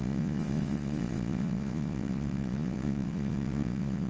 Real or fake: fake